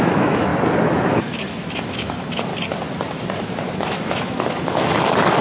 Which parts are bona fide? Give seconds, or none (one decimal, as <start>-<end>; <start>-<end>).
0.5-1.1; 2.5-3.8